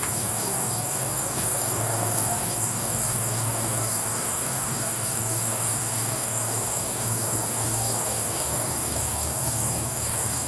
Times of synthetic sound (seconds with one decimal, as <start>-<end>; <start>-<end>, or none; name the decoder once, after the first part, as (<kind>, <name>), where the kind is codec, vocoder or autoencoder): 0.0-10.5 (codec, DAC)